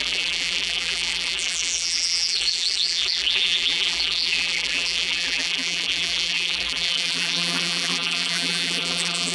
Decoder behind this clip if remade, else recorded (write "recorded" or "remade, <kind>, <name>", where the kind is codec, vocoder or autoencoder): remade, vocoder, BigVGAN v2